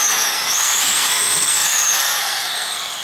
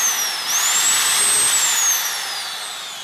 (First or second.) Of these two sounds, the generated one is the first